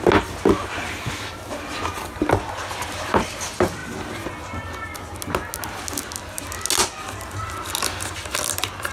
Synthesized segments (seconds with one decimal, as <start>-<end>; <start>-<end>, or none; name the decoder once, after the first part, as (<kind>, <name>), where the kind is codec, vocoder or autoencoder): none